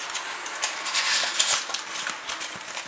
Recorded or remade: recorded